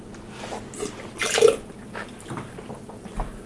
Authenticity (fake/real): real